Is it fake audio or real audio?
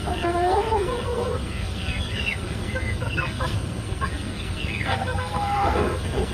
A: fake